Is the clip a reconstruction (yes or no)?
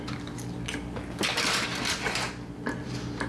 no